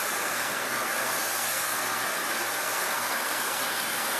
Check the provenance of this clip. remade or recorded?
remade